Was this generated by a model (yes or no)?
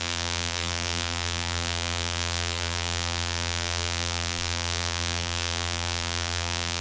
yes